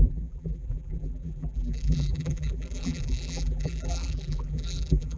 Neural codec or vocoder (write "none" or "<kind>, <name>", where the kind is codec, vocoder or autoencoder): vocoder, BigVGAN v2